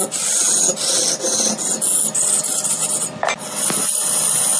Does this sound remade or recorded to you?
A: recorded